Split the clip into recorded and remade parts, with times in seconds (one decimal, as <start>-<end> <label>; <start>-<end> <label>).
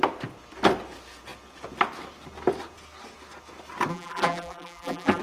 0.0-3.9 recorded; 3.9-5.2 remade